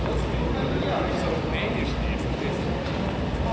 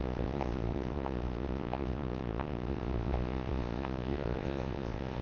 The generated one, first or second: second